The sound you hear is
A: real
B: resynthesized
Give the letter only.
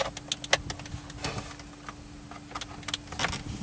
A